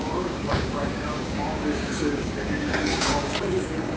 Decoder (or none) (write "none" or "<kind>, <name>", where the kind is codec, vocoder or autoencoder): codec, DAC